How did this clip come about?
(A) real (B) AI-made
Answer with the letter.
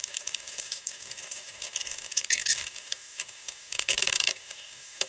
B